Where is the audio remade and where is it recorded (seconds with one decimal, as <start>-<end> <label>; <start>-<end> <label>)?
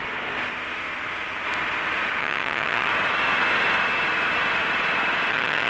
0.0-2.2 recorded; 2.2-2.9 remade; 2.9-5.3 recorded; 5.3-5.7 remade